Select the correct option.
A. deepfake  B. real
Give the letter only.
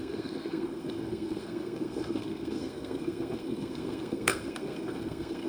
A